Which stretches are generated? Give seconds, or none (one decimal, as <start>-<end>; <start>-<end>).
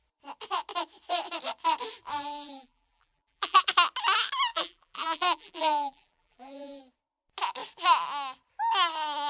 2.2-3.6; 4.5-6.8